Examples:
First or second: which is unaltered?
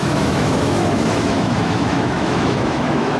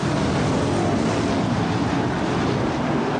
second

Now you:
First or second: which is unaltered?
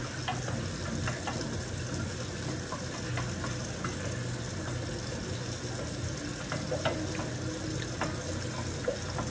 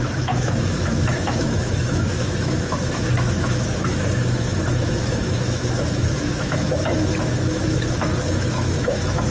first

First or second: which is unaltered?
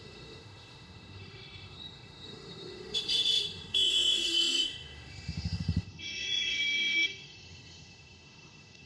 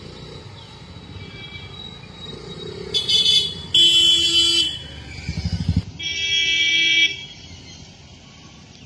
second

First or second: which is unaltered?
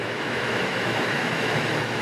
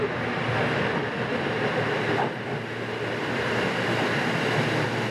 second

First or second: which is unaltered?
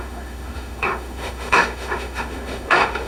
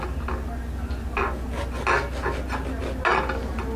second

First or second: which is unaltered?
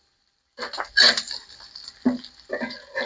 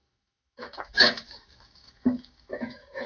first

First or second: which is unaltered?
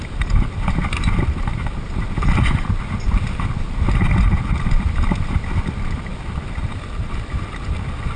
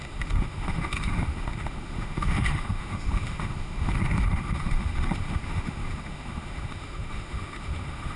first